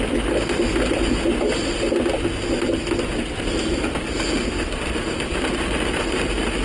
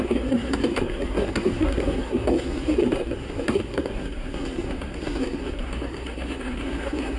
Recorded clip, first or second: first